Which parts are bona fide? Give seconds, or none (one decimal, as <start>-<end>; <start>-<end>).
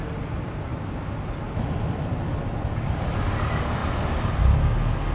0.0-5.1